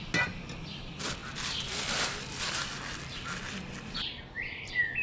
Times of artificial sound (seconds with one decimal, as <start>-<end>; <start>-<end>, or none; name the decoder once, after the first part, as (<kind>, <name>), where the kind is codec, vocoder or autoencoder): none